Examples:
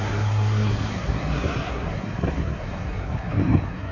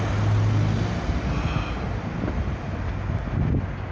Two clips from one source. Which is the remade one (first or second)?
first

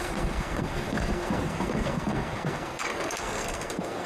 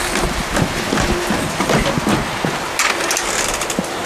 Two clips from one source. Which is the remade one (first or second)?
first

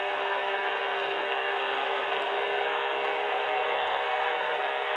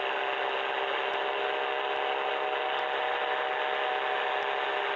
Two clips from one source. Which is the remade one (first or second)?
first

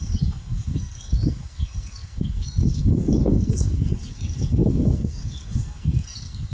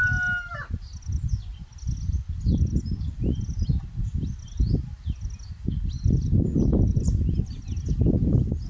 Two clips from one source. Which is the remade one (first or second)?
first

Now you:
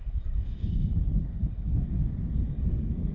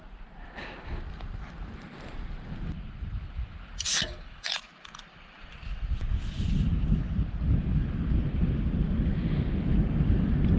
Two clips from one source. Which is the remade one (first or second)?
first